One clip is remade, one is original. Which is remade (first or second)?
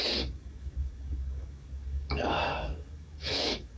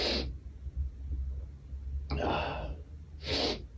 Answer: first